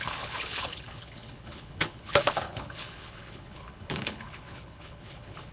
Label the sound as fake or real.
fake